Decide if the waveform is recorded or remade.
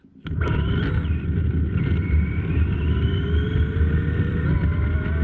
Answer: recorded